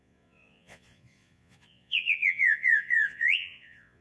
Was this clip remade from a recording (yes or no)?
yes